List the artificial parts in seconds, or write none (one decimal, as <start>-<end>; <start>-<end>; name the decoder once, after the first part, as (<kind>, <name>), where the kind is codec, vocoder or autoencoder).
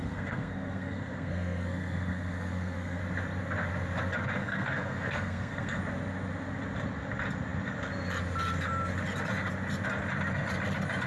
0.0-3.0 (codec, SNAC); 4.4-5.8